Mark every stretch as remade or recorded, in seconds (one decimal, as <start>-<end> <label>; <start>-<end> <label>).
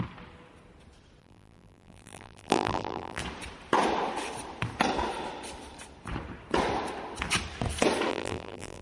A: 0.0-1.2 recorded; 1.2-3.2 remade; 3.2-8.1 recorded; 8.1-8.8 remade